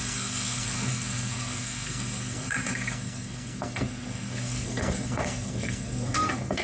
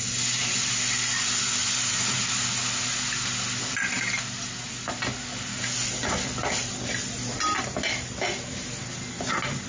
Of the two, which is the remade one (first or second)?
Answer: first